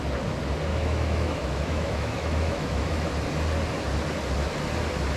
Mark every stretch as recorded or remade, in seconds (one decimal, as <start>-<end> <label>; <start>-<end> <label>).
0.0-0.7 recorded; 0.7-3.1 remade; 3.1-5.2 recorded